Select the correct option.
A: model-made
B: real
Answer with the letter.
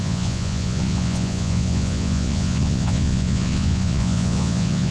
A